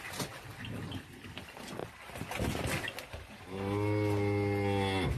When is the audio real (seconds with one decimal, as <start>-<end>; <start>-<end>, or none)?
0.0-5.2